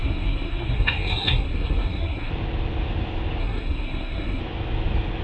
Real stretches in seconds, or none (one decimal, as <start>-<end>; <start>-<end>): 2.3-3.4; 4.4-5.2